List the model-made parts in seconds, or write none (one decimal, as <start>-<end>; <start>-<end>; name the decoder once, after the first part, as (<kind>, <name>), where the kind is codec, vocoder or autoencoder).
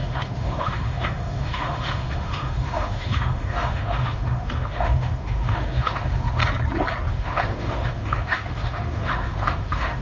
0.0-6.4 (autoencoder, DAC-VAE); 7.1-10.0